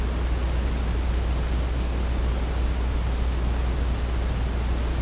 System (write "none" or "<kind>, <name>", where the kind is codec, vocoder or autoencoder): none